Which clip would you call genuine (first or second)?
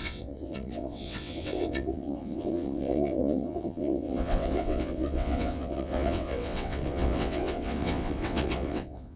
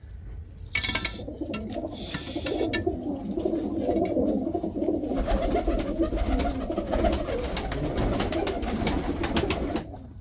second